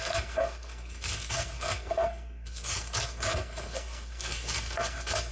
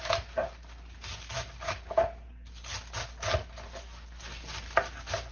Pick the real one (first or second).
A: second